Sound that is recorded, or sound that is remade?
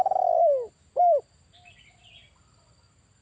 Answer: recorded